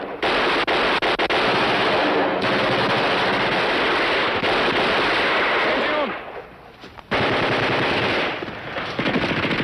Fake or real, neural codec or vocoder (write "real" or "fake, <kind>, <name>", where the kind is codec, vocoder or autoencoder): real